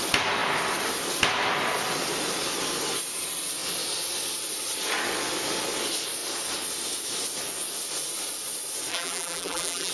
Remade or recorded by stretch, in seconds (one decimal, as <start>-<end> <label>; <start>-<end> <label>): 0.0-8.9 recorded; 8.9-9.9 remade